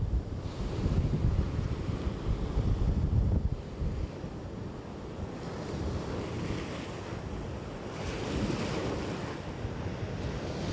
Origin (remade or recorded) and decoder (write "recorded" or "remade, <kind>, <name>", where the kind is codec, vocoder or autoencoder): recorded